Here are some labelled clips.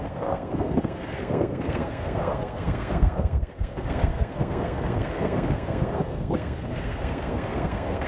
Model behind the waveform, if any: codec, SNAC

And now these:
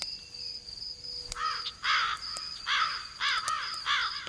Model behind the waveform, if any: none